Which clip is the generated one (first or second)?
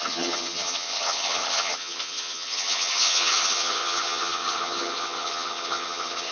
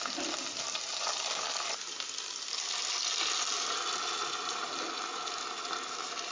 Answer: first